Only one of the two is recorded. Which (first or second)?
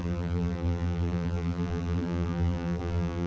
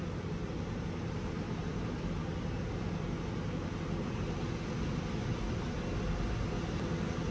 second